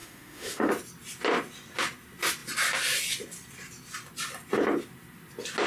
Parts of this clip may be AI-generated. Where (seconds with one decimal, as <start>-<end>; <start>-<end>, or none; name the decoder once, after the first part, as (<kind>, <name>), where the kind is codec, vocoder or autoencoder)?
0.0-0.7 (autoencoder, DAC-VAE)